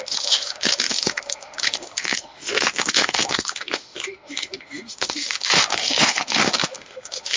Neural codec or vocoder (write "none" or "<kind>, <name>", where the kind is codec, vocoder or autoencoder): autoencoder, DAC-VAE